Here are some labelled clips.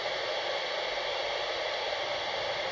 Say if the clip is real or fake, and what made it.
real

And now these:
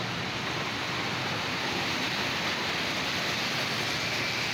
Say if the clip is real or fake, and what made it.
real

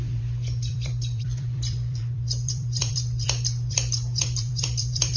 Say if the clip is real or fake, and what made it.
fake, vocoder, BigVGAN v2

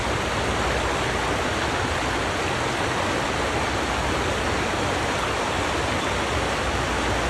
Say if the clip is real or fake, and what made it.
real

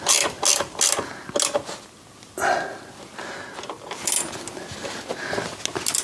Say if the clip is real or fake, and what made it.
real